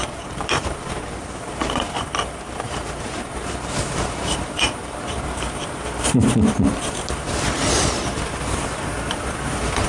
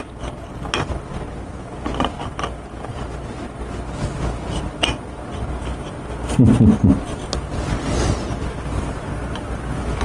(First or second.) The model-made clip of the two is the first